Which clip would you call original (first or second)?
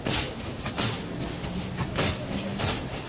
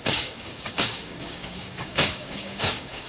first